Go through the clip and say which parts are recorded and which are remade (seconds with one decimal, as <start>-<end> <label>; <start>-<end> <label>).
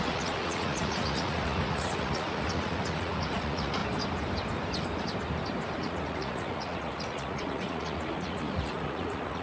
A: 0.0-3.8 remade; 3.8-5.8 recorded; 5.8-9.4 remade